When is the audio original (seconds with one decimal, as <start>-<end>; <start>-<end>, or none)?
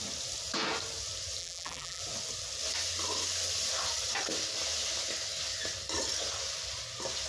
0.0-1.4; 2.0-7.3